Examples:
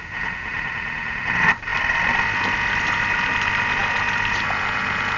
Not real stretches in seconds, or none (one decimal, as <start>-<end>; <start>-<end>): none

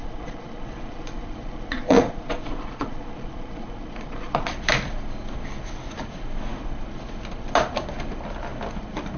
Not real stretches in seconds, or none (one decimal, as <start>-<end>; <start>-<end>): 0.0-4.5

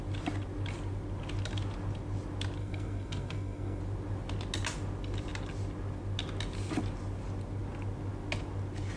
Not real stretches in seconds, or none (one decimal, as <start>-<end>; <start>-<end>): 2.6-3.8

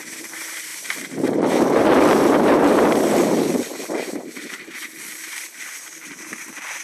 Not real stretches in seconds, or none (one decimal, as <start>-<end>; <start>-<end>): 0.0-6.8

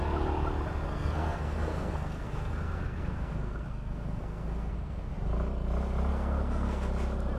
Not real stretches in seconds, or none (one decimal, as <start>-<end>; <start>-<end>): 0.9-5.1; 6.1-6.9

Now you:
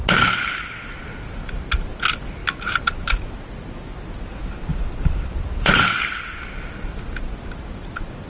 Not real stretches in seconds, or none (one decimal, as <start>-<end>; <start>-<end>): 4.7-7.3

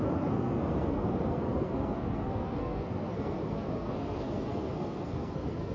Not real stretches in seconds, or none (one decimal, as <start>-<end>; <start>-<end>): 0.0-5.7